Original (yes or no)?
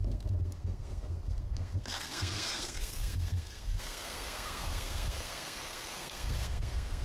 no